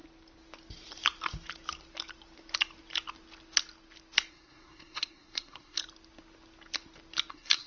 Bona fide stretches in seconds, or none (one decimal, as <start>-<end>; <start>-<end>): 0.0-4.3; 5.8-7.3